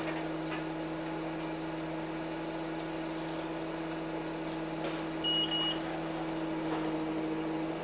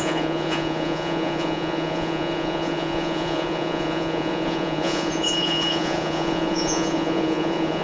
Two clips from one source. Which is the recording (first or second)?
first